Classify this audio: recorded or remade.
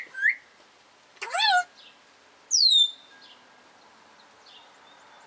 recorded